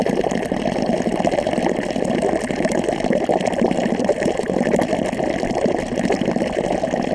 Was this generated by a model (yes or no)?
no